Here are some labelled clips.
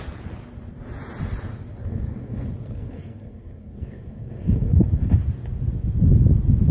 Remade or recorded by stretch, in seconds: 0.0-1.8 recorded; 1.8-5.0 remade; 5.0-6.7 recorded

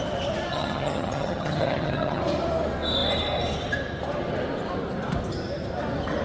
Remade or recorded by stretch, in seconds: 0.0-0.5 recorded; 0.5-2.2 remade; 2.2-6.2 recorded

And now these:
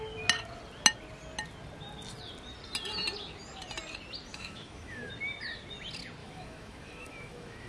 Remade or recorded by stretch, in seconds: 0.0-4.3 recorded; 4.3-5.1 remade; 5.1-6.2 recorded; 6.2-7.7 remade

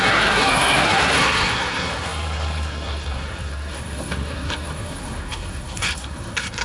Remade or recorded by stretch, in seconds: 0.0-6.6 remade

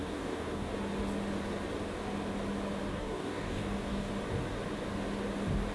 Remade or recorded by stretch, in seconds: 0.0-0.7 remade; 0.7-2.9 recorded; 2.9-4.1 remade; 4.1-5.7 recorded